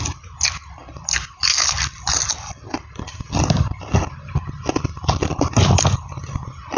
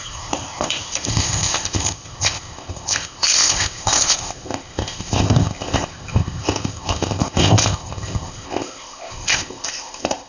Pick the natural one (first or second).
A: first